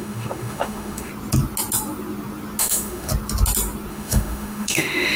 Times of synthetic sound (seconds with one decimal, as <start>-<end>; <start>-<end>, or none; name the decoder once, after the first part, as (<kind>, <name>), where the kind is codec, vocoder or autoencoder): 0.0-1.1 (autoencoder, DAC-VAE); 2.6-3.1; 3.9-5.2